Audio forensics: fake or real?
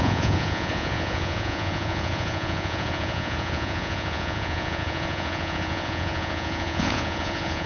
fake